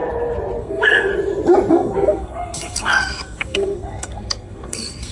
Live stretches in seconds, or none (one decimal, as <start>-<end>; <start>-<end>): 0.0-0.6; 1.1-1.7